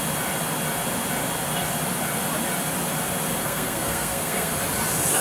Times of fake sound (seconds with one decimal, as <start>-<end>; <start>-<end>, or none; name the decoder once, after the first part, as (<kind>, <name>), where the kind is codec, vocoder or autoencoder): 3.4-4.5 (codec, SNAC)